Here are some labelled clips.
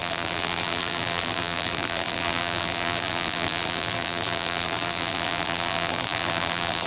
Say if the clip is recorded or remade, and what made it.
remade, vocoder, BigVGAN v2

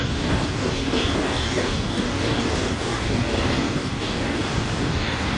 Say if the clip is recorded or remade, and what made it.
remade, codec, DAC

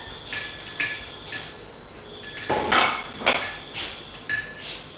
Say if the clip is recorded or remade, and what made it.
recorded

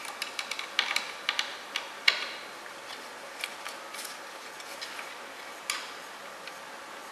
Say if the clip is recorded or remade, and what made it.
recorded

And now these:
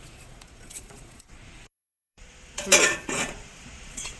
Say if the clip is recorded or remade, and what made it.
remade, vocoder, Vocos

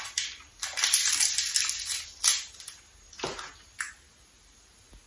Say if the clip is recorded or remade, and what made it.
recorded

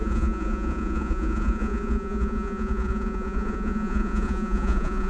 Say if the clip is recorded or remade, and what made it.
remade, vocoder, Vocos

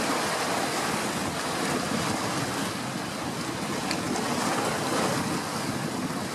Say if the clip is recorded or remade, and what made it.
recorded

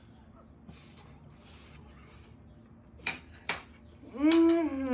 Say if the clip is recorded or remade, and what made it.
recorded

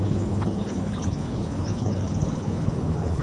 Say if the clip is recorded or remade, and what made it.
remade, codec, HILCodec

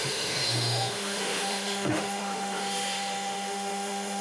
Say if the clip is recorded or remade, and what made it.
remade, autoencoder, DAC-VAE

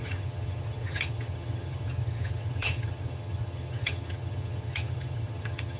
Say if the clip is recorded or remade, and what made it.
remade, vocoder, HiFi-GAN